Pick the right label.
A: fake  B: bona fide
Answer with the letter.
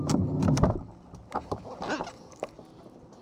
B